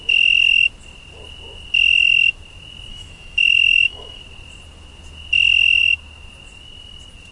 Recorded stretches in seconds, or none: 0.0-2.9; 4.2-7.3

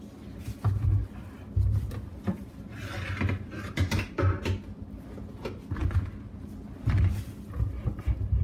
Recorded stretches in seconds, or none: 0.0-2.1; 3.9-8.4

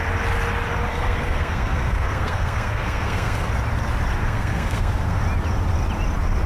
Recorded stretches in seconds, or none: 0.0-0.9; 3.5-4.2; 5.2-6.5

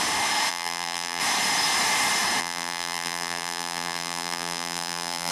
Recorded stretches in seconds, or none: 0.0-0.5; 1.2-2.4

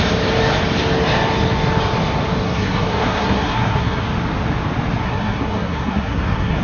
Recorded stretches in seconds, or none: 0.0-2.4; 4.0-5.0

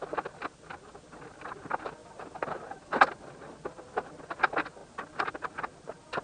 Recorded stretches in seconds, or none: 0.0-6.2

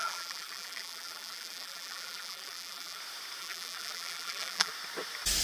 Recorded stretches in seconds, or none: 3.0-3.4; 4.7-5.4